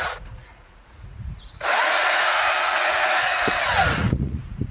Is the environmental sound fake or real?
fake